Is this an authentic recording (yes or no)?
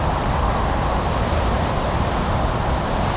yes